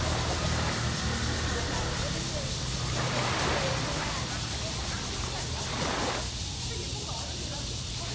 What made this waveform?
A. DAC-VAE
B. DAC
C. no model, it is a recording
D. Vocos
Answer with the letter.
C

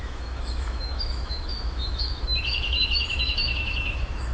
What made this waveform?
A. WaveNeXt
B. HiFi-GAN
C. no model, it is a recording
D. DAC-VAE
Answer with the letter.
D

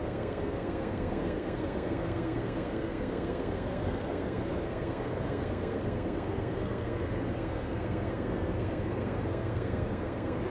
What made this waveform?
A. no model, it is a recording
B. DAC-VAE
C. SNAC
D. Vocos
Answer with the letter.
C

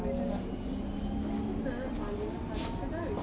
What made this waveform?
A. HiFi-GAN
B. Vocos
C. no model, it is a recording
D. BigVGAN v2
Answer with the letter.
C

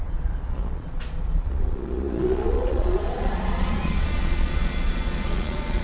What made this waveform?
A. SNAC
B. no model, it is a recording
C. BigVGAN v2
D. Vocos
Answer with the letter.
D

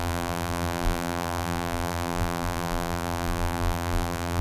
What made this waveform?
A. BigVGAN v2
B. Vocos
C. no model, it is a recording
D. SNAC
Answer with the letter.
A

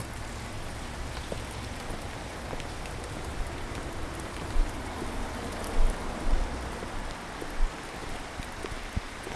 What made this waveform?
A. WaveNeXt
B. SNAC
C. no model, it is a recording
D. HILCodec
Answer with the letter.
C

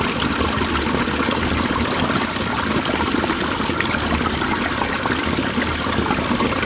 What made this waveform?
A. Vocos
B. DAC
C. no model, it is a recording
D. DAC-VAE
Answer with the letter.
C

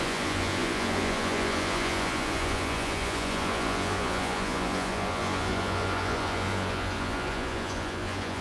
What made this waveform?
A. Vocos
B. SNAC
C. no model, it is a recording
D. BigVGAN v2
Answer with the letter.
A